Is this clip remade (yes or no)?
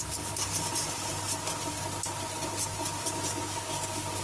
no